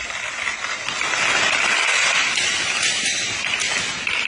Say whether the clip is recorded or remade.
recorded